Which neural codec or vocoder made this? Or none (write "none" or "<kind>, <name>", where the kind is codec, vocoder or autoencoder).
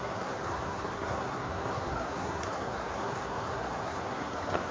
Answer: codec, SNAC